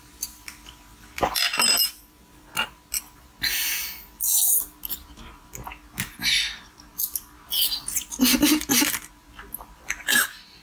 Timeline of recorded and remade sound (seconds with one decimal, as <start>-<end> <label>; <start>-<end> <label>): 0.0-1.8 recorded; 1.8-2.5 remade; 2.5-10.6 recorded